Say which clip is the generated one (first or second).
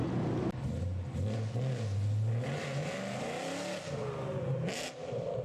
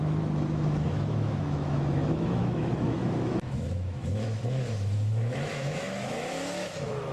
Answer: second